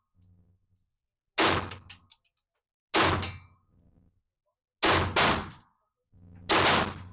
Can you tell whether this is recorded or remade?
recorded